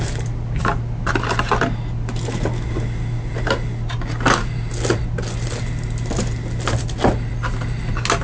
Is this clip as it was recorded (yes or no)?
yes